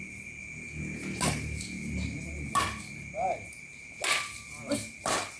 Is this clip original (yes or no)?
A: yes